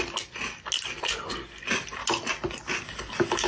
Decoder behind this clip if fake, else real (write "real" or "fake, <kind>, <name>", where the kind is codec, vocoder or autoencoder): real